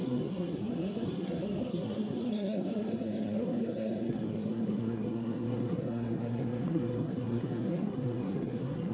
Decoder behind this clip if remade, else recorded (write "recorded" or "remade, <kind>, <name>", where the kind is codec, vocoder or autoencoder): remade, codec, SNAC